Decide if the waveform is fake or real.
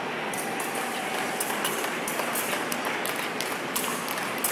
real